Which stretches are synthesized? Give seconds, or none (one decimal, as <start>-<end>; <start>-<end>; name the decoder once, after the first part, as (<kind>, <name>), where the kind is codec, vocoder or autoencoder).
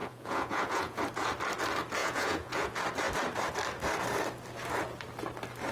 0.0-1.0 (vocoder, Vocos); 2.0-2.8